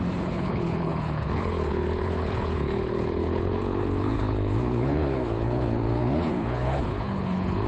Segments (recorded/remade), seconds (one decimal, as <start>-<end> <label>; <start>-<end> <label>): 0.0-7.7 remade